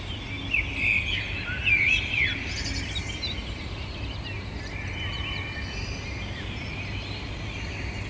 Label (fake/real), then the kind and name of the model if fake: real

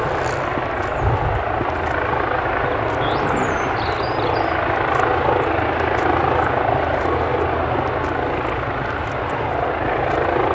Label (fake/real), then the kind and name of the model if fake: real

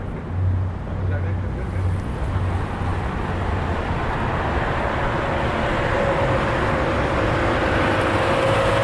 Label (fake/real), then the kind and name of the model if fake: real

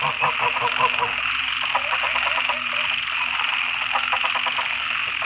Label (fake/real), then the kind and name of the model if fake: real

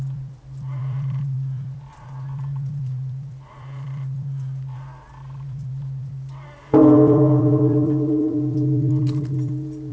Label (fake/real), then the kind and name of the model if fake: fake, vocoder, BigVGAN v2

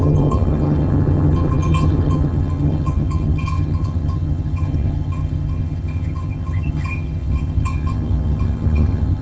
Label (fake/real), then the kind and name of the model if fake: fake, vocoder, HiFi-GAN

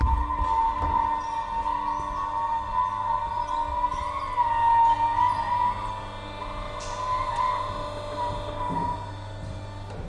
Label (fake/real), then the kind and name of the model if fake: real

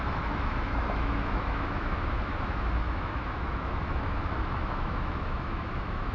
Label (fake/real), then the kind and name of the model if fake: fake, autoencoder, DAC-VAE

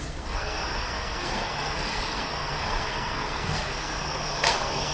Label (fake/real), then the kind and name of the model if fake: fake, codec, SNAC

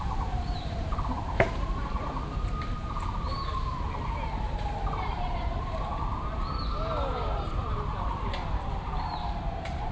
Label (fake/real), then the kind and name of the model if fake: fake, vocoder, BigVGAN v2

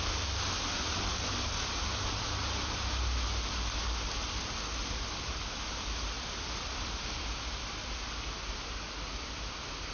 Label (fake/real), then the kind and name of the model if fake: real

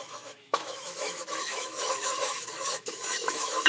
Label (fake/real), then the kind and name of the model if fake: fake, autoencoder, DAC-VAE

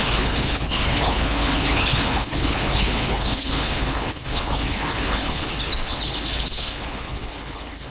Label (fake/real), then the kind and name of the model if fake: fake, codec, HILCodec